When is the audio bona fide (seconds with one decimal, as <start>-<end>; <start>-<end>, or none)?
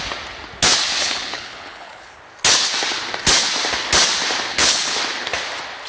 0.0-1.0; 2.2-4.5; 5.0-5.9